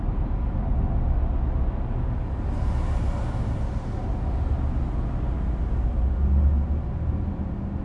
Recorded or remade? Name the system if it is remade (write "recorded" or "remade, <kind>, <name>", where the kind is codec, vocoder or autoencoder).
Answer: recorded